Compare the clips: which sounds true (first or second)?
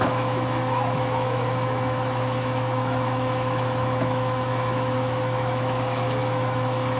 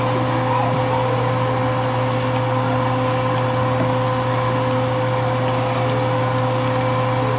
second